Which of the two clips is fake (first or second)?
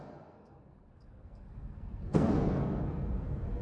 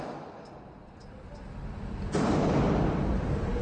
first